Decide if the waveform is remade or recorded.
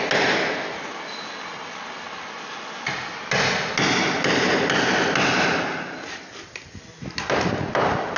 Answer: recorded